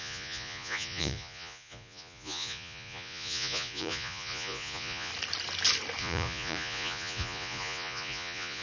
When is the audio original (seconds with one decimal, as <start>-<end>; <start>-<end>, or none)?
5.1-6.0